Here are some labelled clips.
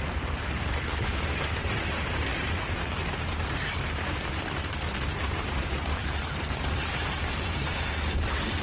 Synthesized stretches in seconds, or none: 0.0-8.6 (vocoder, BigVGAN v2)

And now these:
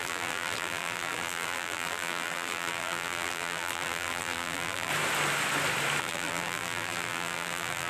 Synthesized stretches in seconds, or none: 0.0-4.9 (vocoder, BigVGAN v2); 6.0-7.9

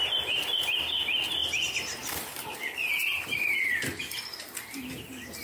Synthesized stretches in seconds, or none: none

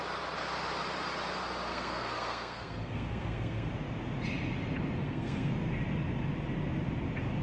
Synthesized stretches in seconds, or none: 1.7-3.7 (codec, SNAC); 5.0-5.5

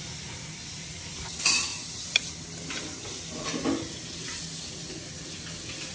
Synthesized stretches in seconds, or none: none

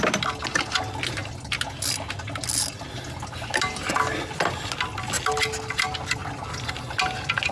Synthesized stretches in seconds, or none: none

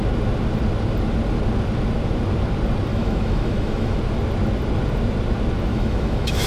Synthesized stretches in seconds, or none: 2.9-4.0 (autoencoder, DAC-VAE); 5.7-6.5

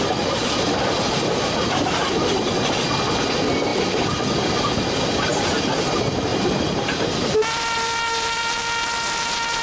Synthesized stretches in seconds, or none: 0.4-2.9 (vocoder, BigVGAN v2); 3.7-4.2; 6.3-9.6